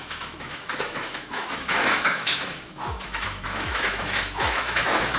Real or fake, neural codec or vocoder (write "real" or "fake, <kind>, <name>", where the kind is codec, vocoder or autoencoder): fake, autoencoder, DAC-VAE